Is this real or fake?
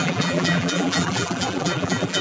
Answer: fake